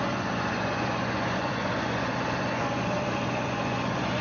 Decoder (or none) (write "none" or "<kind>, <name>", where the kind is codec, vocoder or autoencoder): vocoder, Vocos